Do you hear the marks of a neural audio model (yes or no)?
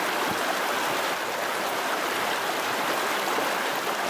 no